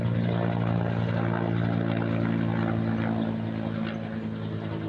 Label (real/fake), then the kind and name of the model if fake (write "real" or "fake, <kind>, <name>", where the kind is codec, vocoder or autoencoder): real